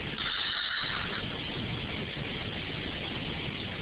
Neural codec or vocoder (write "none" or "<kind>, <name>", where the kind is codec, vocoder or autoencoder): none